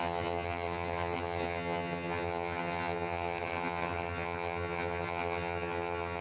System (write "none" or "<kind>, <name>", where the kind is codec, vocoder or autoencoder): vocoder, HiFi-GAN